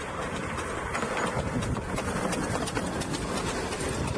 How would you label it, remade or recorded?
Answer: recorded